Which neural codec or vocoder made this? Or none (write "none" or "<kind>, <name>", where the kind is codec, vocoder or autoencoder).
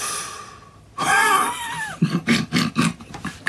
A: vocoder, BigVGAN v2